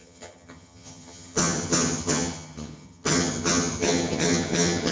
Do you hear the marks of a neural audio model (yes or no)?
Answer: yes